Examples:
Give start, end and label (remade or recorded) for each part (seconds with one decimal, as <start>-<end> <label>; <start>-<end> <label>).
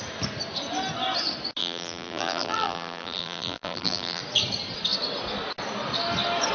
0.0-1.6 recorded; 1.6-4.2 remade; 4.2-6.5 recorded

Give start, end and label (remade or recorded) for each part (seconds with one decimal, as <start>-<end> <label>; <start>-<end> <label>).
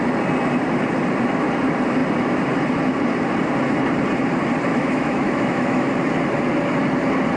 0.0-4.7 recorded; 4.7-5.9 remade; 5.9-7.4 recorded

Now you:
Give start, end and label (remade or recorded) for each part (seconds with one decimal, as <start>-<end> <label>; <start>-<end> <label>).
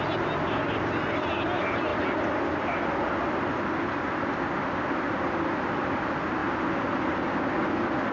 0.0-8.1 recorded